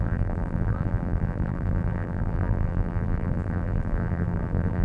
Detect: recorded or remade remade